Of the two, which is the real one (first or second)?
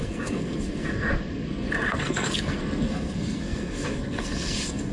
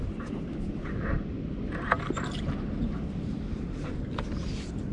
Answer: second